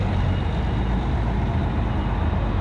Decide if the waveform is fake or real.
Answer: real